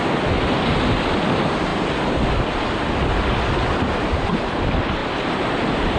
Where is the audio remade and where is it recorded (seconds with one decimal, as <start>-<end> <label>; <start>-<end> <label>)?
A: 0.0-1.7 recorded; 1.7-2.7 remade; 2.7-5.0 recorded; 5.0-5.6 remade; 5.6-6.0 recorded